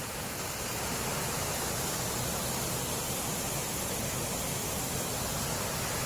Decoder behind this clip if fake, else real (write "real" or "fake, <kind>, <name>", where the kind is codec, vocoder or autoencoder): real